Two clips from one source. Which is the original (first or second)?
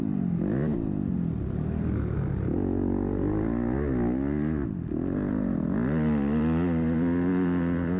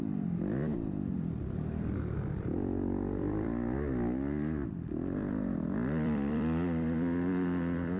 first